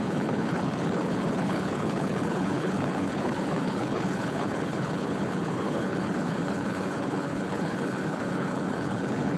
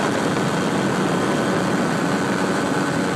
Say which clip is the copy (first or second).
first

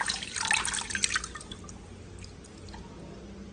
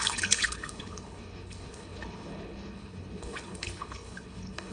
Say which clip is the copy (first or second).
second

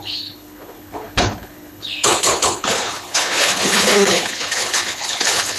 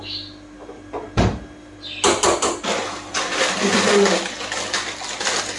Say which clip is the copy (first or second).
first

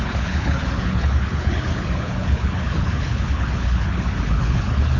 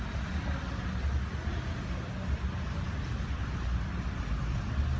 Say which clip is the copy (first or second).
first